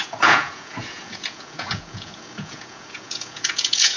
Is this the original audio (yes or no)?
no